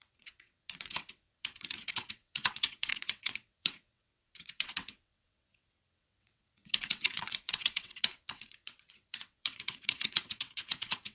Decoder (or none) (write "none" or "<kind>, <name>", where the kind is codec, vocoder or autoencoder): vocoder, WaveNeXt